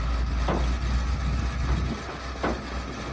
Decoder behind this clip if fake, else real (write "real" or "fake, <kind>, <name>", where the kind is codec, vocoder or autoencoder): real